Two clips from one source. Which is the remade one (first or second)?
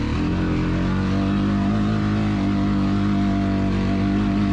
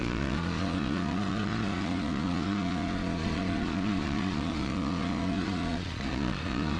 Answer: second